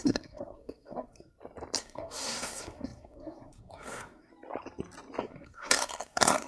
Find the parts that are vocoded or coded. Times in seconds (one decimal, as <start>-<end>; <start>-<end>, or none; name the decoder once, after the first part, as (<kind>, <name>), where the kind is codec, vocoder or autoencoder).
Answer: 0.0-1.3 (codec, SNAC); 1.8-4.3; 5.2-6.5